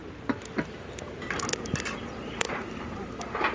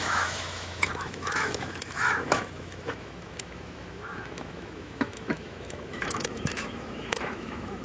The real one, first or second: first